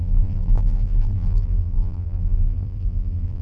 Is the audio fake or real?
fake